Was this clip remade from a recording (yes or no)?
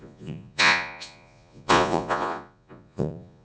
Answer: yes